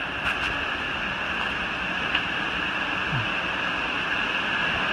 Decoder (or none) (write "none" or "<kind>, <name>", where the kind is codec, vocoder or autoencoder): none